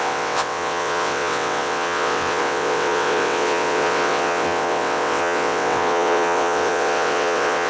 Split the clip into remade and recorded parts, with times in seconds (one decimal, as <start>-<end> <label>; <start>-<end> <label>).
0.0-7.7 remade